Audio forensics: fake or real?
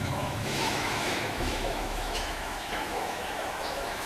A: fake